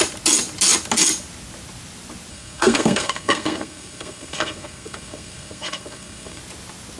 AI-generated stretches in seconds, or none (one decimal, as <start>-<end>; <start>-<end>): 2.3-6.4